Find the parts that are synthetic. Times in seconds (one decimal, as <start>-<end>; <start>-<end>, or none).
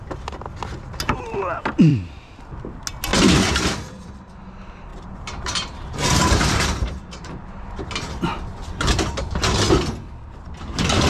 1.9-2.4; 4.9-7.8